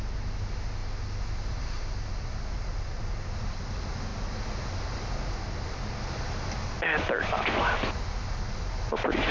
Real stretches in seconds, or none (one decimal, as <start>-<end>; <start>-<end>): 0.0-9.3